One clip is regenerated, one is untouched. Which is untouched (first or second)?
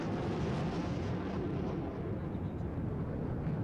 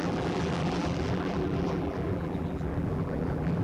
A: first